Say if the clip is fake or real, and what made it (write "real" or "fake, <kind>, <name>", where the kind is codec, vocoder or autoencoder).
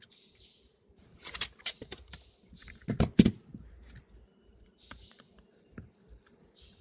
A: fake, vocoder, BigVGAN v2